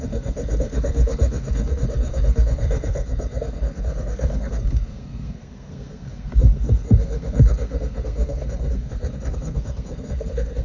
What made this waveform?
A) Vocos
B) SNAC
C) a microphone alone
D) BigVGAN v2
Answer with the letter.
B